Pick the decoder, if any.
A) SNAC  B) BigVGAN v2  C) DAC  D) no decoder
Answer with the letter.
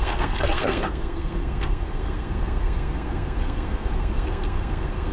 A